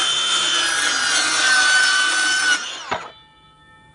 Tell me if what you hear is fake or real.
real